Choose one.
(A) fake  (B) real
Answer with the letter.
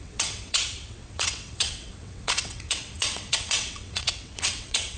A